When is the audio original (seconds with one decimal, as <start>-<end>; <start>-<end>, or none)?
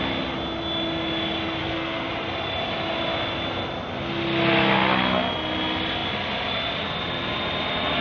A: 0.0-1.6; 2.1-8.0